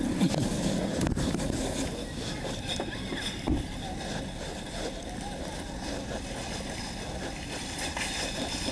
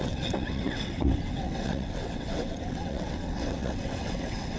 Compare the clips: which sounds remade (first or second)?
second